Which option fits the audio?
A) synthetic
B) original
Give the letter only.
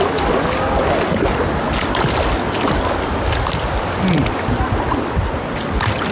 B